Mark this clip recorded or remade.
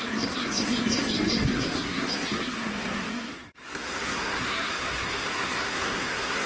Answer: remade